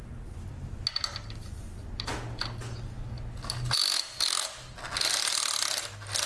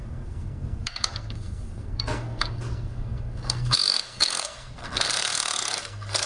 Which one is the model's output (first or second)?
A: second